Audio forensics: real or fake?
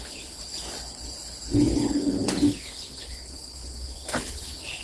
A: fake